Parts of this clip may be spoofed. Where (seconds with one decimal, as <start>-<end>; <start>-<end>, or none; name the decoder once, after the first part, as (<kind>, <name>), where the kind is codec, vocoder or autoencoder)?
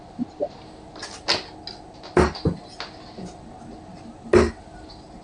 none